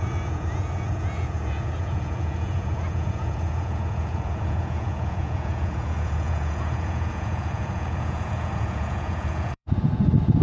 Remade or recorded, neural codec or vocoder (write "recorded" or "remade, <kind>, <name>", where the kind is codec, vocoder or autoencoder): remade, vocoder, Vocos